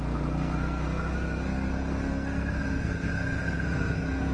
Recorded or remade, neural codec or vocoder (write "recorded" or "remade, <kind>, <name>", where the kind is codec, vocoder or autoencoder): remade, codec, SNAC